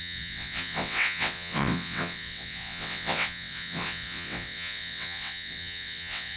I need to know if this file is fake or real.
fake